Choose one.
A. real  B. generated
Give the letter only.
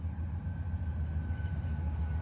A